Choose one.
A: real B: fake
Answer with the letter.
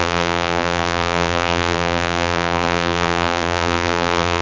B